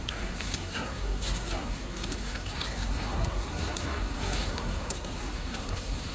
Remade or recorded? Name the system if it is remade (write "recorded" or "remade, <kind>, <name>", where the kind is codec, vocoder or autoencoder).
remade, codec, SNAC